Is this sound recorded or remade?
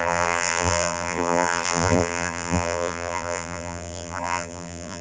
remade